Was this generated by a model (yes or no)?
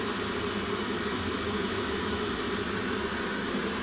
no